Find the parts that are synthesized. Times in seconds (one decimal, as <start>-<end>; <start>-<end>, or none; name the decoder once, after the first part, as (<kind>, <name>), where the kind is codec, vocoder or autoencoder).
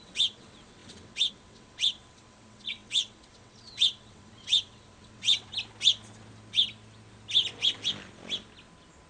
0.0-5.5 (vocoder, WaveNeXt)